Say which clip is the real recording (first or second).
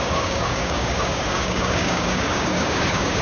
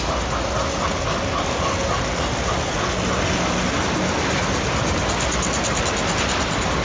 second